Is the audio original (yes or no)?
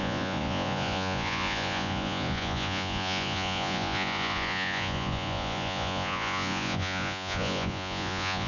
no